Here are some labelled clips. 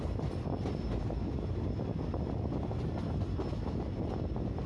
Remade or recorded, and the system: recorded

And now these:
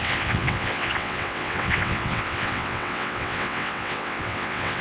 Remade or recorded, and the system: remade, vocoder, WaveNeXt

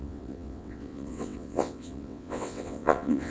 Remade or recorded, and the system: remade, vocoder, WaveNeXt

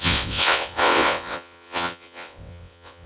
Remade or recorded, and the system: remade, vocoder, WaveNeXt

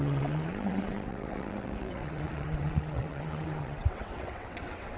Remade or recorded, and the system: remade, vocoder, WaveNeXt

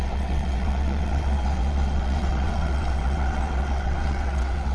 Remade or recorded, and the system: remade, vocoder, WaveNeXt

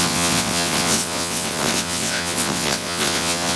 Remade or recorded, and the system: remade, vocoder, WaveNeXt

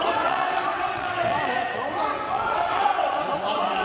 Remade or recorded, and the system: remade, vocoder, WaveNeXt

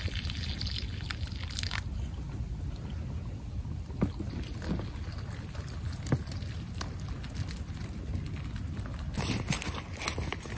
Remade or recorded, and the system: recorded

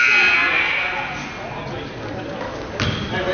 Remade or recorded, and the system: recorded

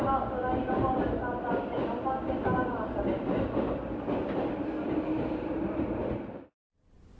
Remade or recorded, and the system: recorded